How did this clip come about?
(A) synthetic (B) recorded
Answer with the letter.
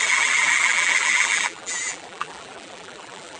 A